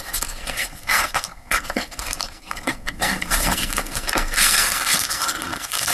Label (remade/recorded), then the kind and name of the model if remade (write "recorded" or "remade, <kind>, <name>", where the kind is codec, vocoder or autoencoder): remade, codec, SNAC